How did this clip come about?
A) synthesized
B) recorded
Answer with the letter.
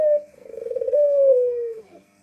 A